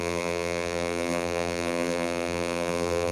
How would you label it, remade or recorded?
remade